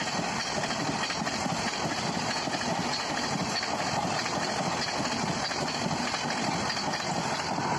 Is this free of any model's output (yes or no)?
yes